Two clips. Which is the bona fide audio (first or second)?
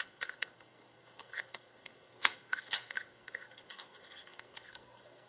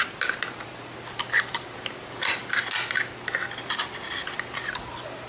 second